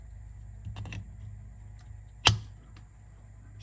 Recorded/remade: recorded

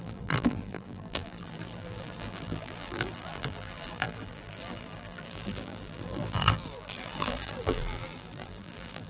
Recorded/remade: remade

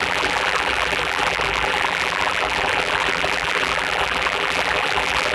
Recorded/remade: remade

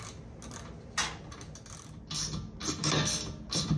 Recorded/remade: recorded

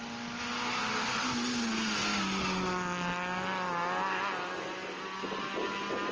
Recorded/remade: recorded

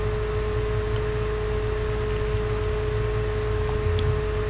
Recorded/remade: recorded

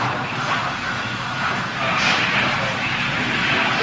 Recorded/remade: remade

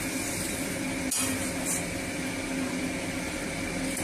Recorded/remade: recorded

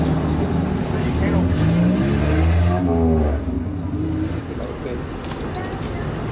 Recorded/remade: recorded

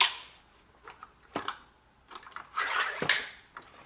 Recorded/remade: recorded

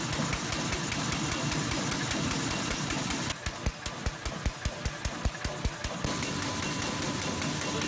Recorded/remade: recorded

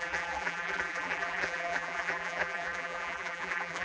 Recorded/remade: remade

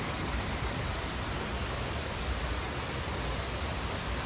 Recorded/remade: remade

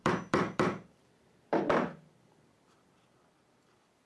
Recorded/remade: remade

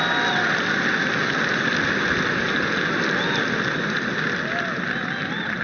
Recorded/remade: recorded